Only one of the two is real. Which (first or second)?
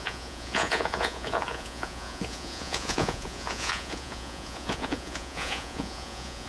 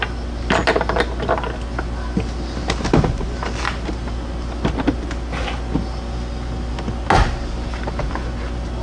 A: second